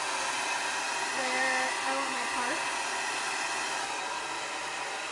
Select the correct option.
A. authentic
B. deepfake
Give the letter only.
A